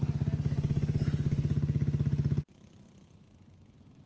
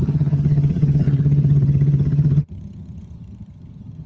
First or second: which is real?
first